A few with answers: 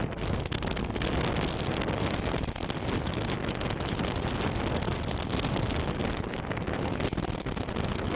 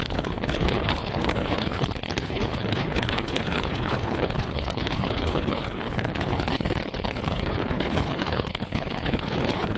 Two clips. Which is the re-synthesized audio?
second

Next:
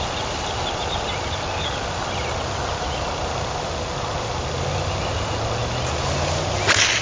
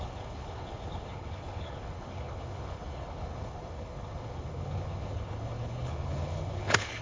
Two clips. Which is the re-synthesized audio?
second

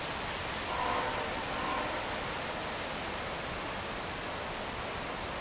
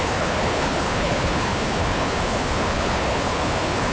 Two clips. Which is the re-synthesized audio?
second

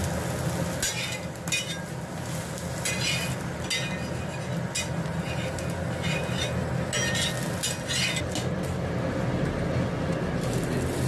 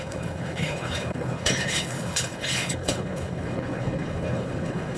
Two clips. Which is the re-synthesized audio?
second